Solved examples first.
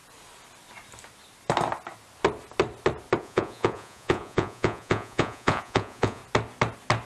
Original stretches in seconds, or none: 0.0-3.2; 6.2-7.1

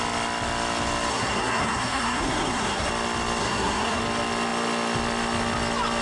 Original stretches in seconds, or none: 0.0-1.1; 2.9-3.4; 4.0-6.0

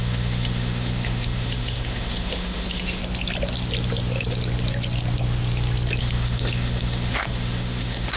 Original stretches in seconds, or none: 3.0-6.0

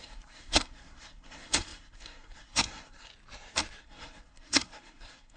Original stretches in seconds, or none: 3.1-3.8

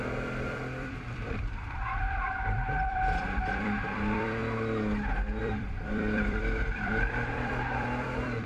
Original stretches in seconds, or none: 4.4-5.4

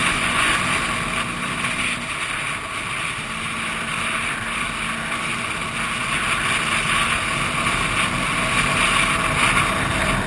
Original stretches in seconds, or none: 0.5-10.3

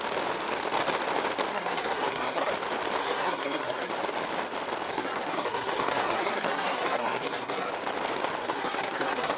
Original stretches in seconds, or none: 0.0-1.5; 2.5-3.0; 3.9-4.9; 7.7-8.4

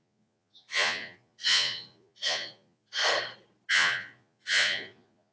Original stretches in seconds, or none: 3.0-3.7